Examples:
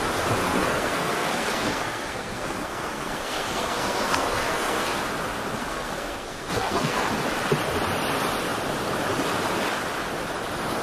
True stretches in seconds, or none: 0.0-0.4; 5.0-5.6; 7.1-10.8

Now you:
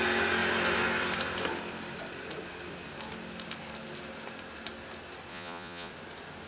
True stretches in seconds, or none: 0.0-5.3; 5.9-6.5

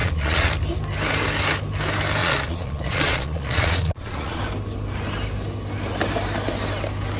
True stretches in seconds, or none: 0.5-2.2; 4.4-7.2

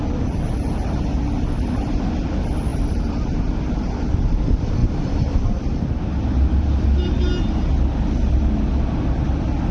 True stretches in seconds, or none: 0.0-9.7